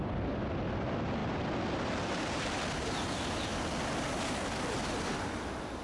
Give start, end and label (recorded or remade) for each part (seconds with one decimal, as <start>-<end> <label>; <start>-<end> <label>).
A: 0.0-5.8 recorded